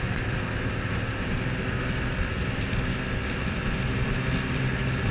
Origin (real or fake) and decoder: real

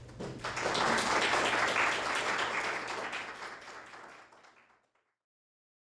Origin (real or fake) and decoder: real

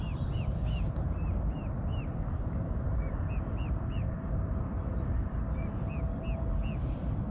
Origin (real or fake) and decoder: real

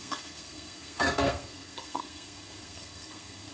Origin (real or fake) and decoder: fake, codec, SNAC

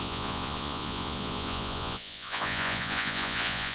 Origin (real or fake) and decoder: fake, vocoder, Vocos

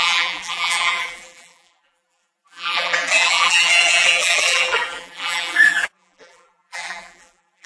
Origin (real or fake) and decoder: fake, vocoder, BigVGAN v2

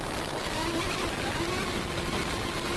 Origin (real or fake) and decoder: real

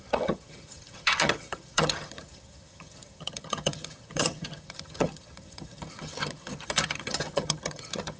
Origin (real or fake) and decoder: fake, vocoder, HiFi-GAN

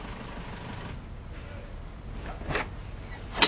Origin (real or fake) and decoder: real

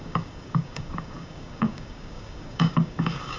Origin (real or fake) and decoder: fake, codec, DAC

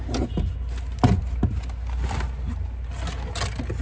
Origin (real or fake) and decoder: real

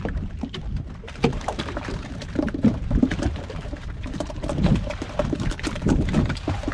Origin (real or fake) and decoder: fake, vocoder, BigVGAN v2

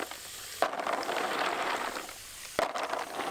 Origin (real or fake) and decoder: real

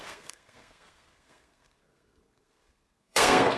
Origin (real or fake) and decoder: fake, codec, SNAC